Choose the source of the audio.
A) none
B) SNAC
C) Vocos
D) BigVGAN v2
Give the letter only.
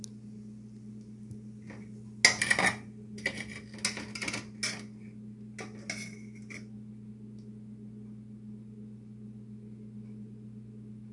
A